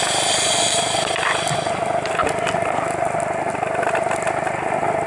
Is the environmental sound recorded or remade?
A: recorded